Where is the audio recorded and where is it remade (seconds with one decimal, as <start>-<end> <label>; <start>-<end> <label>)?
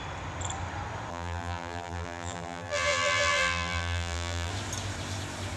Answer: 0.0-1.1 recorded; 1.1-4.5 remade; 4.5-5.6 recorded